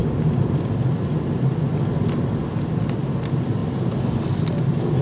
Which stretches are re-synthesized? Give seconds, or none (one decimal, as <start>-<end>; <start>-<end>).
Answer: none